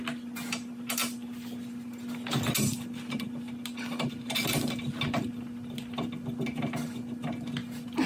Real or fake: real